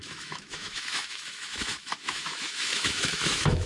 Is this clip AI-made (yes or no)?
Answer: yes